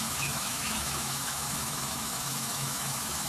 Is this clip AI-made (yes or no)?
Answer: yes